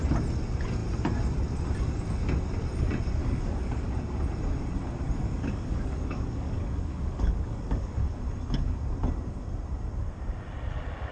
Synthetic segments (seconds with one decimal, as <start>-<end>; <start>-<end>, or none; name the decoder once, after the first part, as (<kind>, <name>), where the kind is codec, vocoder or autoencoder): 3.2-3.9 (codec, DAC); 5.3-8.2